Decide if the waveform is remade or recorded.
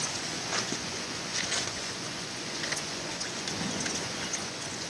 remade